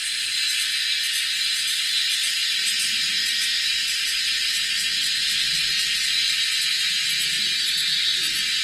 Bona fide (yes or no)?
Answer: yes